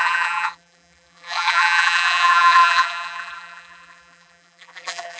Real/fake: fake